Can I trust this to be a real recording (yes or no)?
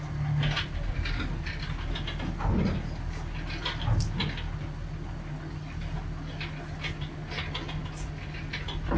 yes